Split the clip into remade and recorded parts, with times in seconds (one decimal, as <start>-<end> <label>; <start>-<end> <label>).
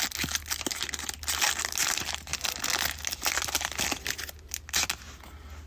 0.0-5.7 recorded